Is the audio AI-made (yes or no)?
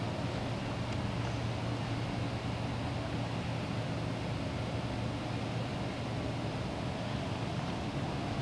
no